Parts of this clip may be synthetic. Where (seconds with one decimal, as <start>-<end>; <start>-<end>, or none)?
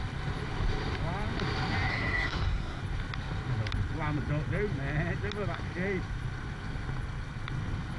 1.9-2.8